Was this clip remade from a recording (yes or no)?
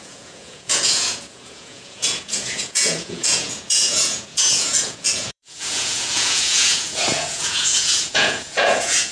yes